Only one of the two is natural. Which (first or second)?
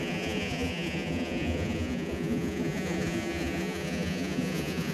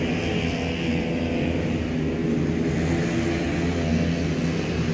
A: second